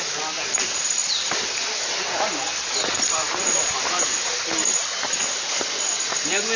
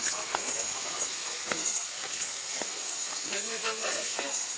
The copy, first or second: second